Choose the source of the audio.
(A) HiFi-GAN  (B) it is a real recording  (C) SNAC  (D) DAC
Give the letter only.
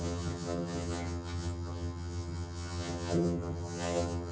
A